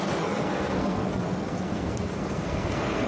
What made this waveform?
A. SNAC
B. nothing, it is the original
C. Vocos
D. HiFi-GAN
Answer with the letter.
A